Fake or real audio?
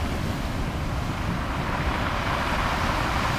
fake